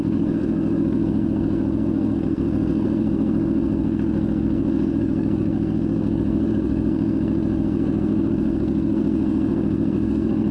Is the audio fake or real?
fake